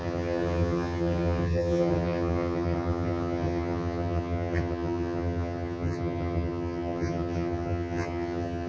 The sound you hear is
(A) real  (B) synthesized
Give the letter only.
B